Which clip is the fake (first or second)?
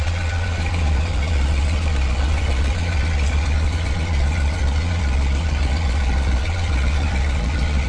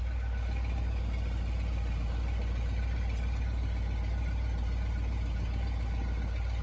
first